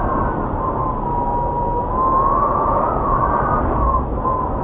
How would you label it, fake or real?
real